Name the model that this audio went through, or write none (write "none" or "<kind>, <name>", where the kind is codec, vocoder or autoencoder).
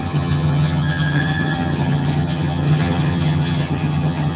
vocoder, HiFi-GAN